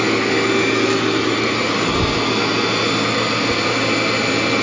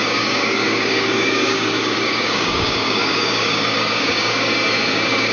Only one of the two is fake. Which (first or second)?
second